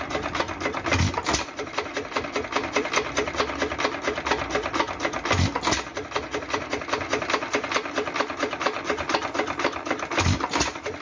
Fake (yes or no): no